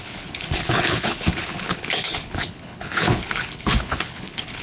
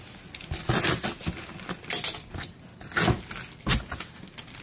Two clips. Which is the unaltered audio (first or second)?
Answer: second